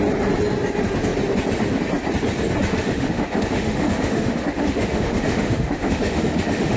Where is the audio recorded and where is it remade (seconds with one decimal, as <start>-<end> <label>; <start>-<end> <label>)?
0.0-2.7 recorded; 2.7-6.8 remade